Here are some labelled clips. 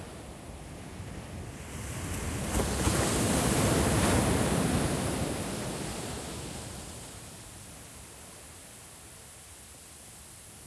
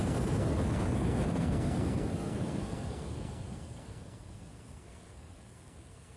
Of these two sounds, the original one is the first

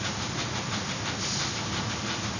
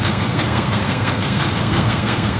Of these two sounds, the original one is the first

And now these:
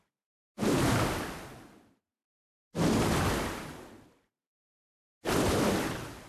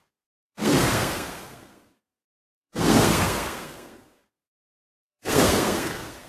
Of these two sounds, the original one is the first